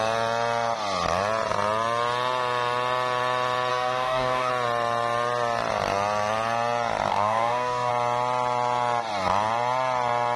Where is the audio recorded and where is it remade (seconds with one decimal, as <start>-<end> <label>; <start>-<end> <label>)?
0.0-3.7 recorded; 3.7-4.5 remade; 4.5-7.1 recorded; 7.1-7.9 remade; 7.9-10.4 recorded